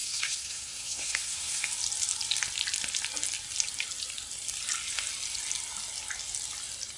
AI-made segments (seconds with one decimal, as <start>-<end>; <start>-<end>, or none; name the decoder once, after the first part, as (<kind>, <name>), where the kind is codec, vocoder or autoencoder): 0.0-1.7 (codec, SNAC)